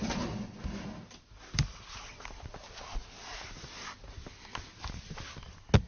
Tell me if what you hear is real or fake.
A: real